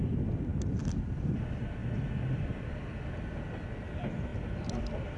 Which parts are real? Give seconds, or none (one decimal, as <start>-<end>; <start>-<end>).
0.0-5.2